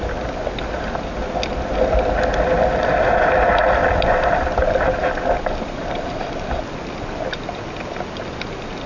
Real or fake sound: real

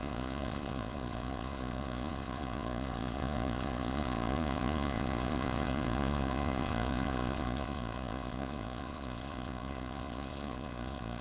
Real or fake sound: fake